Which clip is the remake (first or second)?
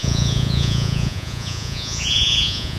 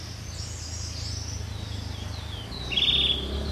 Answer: first